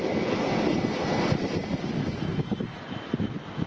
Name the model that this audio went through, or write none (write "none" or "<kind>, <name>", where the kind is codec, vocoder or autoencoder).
none